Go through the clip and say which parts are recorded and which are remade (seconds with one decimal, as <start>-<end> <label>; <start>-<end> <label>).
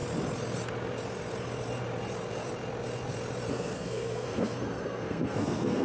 0.0-3.5 recorded; 3.5-5.8 remade